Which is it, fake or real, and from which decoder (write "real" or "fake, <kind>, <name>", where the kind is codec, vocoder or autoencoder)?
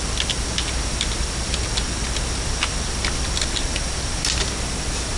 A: real